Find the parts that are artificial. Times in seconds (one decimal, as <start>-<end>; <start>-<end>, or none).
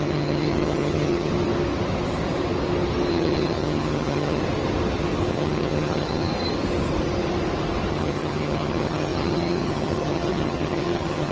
0.0-1.3; 3.1-4.4; 5.3-6.3; 7.9-11.3